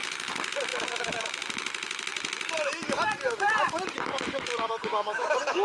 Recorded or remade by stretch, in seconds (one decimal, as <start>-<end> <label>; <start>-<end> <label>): 0.0-2.1 recorded; 2.1-3.5 remade; 3.5-5.6 recorded